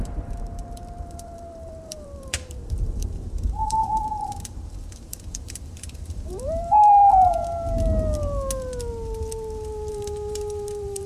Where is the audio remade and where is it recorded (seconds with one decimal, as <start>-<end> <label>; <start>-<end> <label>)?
0.0-6.8 remade; 6.8-9.9 recorded; 9.9-11.1 remade